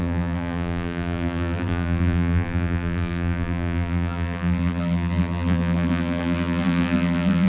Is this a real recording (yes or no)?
no